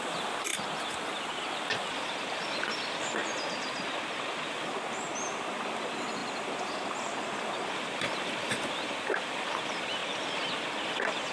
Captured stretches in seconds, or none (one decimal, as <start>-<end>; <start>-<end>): 0.5-1.7; 3.2-4.5; 10.0-10.9